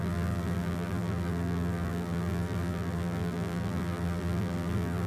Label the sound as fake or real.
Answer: fake